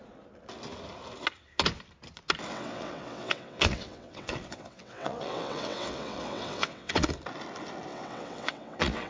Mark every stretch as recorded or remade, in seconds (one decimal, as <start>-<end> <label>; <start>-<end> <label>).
0.0-2.5 recorded; 2.5-7.1 remade; 7.1-7.9 recorded; 7.9-9.1 remade